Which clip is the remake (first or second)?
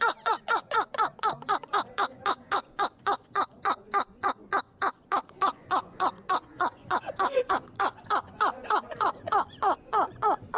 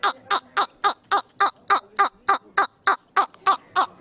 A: first